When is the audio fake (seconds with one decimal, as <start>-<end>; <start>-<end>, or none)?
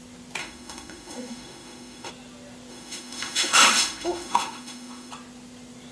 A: 0.4-2.1; 2.7-5.1